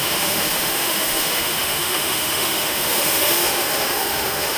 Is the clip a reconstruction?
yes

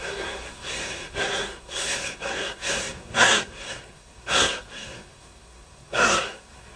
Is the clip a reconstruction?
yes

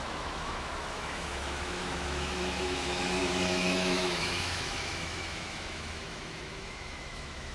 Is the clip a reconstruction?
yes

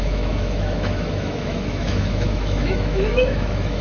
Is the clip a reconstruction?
yes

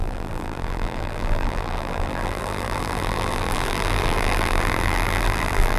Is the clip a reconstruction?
yes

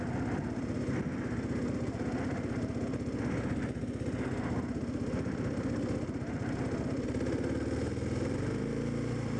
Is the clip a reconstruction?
no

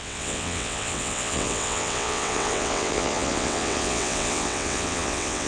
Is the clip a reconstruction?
yes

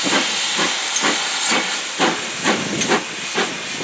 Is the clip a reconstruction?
no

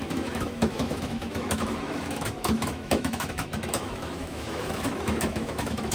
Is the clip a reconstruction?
yes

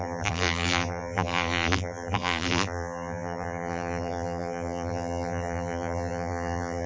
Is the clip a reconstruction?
yes